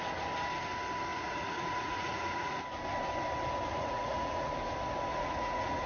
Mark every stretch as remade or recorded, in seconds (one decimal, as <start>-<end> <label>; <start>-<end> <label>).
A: 0.0-1.1 recorded; 1.1-2.6 remade; 2.6-3.7 recorded; 3.7-4.5 remade; 4.5-5.1 recorded; 5.1-5.9 remade

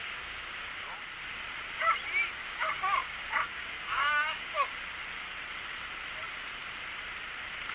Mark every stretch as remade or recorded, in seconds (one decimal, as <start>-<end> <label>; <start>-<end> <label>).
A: 0.0-0.8 remade; 0.8-2.4 recorded; 2.4-4.7 remade; 4.7-7.7 recorded

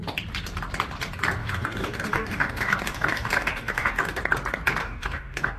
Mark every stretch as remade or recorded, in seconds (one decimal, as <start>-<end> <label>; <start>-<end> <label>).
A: 0.0-1.4 recorded; 1.4-4.2 remade; 4.2-4.8 recorded; 4.8-5.6 remade